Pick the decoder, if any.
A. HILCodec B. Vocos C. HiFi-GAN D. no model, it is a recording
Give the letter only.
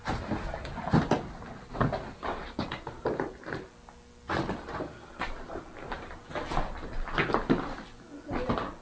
D